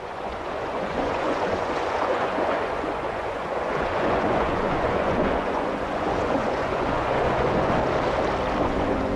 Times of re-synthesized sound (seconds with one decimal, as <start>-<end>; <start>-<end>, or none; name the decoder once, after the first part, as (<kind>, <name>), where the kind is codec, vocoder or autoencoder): 0.0-7.8 (vocoder, Vocos); 8.6-9.2